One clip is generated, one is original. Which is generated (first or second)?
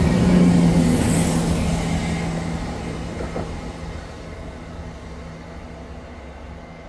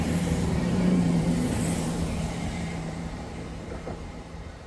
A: second